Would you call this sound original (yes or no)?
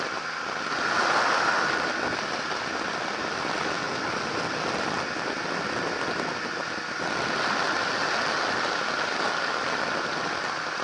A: yes